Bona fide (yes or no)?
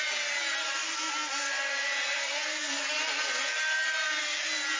yes